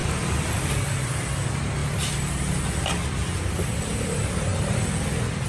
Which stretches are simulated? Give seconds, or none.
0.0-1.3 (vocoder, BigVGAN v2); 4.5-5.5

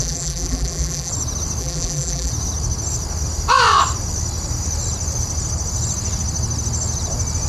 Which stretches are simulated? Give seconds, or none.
0.0-1.1 (vocoder, BigVGAN v2); 1.6-2.3